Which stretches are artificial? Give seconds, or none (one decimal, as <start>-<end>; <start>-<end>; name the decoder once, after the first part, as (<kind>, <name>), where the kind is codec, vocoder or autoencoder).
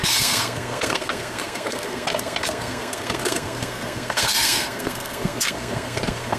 0.0-6.4 (codec, SNAC)